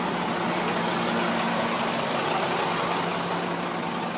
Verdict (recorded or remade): recorded